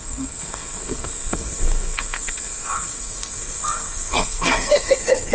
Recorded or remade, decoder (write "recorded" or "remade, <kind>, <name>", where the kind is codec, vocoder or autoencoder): remade, codec, SNAC